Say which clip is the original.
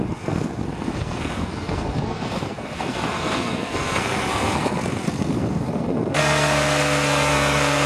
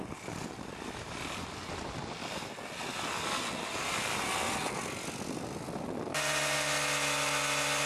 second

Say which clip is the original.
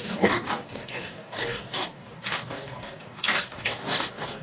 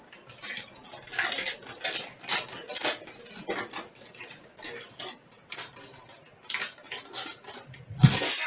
second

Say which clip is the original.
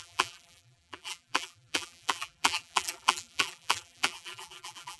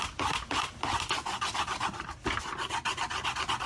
second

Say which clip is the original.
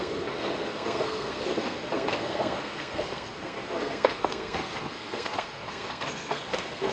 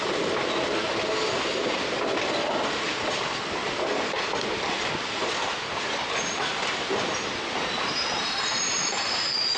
second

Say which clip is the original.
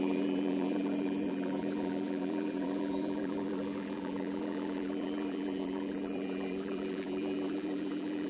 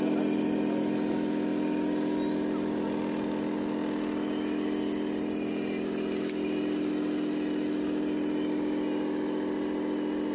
second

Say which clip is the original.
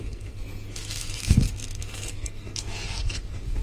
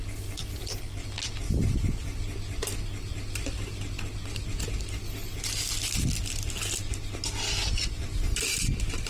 second